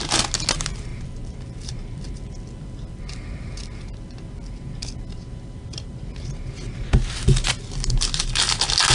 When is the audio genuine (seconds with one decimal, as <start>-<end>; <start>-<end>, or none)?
0.0-8.9